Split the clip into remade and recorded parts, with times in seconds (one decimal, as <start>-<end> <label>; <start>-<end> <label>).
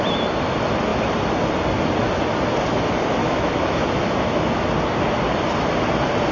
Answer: 0.0-3.2 recorded; 3.2-4.7 remade; 4.7-6.3 recorded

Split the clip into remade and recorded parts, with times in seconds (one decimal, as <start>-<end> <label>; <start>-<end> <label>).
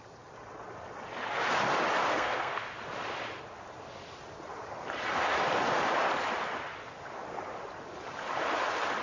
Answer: 0.0-2.1 recorded; 2.1-2.6 remade; 2.6-9.0 recorded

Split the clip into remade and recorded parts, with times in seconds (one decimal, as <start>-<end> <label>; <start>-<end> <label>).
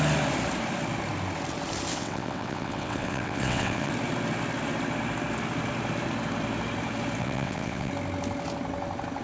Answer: 0.0-1.9 recorded; 1.9-3.9 remade; 3.9-7.2 recorded; 7.2-7.9 remade; 7.9-9.2 recorded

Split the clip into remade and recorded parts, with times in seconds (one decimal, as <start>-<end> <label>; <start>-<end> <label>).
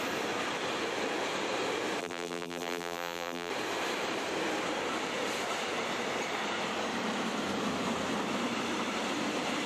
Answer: 0.0-2.0 recorded; 2.0-3.5 remade; 3.5-9.7 recorded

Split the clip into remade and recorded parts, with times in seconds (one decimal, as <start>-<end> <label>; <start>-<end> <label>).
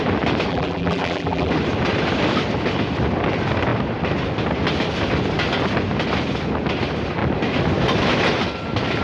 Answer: 0.0-0.5 recorded; 0.5-1.5 remade; 1.5-9.0 recorded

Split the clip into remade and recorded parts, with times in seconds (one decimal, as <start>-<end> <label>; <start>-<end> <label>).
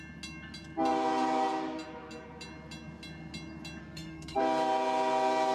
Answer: 0.0-3.8 recorded; 3.8-4.4 remade; 4.4-5.5 recorded